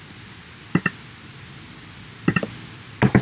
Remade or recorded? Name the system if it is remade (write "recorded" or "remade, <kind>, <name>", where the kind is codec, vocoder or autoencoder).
recorded